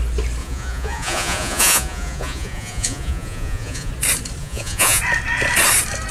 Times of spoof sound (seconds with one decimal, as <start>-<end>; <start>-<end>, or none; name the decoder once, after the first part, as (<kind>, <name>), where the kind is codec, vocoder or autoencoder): 0.4-3.9 (vocoder, Vocos); 4.4-5.0